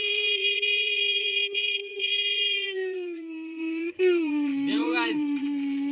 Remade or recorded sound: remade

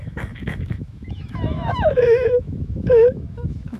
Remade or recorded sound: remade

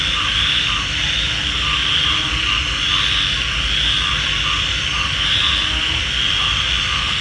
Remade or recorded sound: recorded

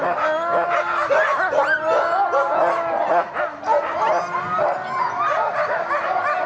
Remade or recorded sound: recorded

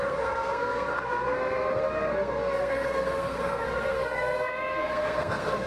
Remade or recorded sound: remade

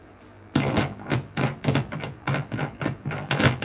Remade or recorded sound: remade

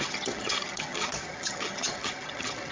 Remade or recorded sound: remade